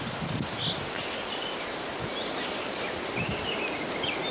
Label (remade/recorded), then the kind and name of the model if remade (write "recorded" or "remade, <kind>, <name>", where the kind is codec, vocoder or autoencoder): recorded